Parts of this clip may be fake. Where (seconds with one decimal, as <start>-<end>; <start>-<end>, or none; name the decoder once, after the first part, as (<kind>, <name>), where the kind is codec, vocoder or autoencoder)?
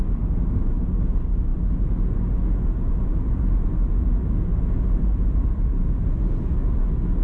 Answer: none